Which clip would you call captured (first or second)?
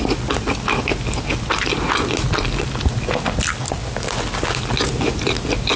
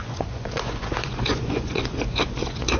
first